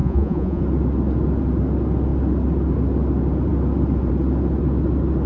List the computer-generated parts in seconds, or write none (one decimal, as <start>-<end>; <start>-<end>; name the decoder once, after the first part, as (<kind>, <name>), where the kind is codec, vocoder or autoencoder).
0.0-0.6 (vocoder, Vocos)